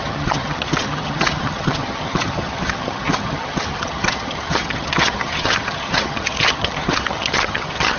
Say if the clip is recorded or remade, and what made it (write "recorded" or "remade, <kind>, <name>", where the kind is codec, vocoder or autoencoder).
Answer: remade, vocoder, HiFi-GAN